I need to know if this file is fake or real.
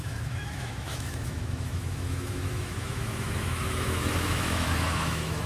fake